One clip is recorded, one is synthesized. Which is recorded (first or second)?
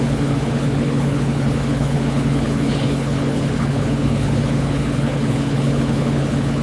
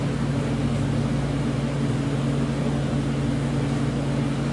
second